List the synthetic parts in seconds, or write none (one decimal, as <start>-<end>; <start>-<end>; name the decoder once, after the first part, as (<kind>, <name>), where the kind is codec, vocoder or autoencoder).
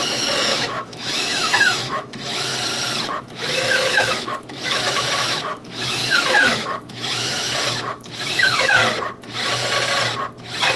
0.0-2.5 (autoencoder, DAC-VAE); 3.2-8.8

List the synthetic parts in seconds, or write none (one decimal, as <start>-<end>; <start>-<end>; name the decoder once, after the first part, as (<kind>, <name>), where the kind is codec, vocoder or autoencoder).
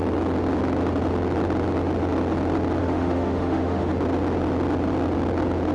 2.8-3.9 (autoencoder, DAC-VAE)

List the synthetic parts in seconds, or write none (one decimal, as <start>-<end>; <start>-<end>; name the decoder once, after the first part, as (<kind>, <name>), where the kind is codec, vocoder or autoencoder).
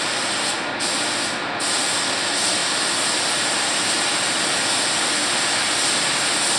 none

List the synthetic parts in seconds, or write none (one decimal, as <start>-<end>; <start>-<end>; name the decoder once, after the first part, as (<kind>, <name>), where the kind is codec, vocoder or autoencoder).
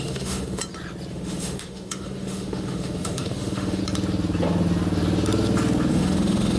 0.0-0.6 (autoencoder, DAC-VAE); 1.1-3.8; 5.9-6.6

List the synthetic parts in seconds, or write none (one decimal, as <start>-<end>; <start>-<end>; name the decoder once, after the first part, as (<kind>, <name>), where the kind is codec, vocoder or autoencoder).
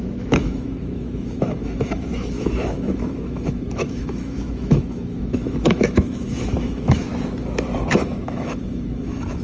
0.0-7.1 (autoencoder, DAC-VAE); 7.9-9.4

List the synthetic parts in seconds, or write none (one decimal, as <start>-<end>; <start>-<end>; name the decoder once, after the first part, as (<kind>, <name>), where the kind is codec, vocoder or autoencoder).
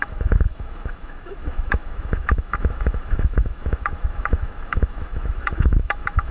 0.0-6.3 (autoencoder, DAC-VAE)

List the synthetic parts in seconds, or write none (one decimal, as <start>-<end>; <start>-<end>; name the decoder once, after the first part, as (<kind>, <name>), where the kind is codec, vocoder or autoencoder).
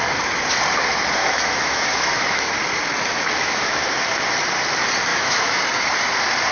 1.2-2.5 (autoencoder, DAC-VAE); 3.1-3.9; 5.1-5.6